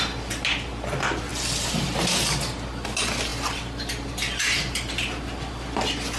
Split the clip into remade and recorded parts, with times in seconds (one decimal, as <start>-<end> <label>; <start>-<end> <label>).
0.0-6.2 recorded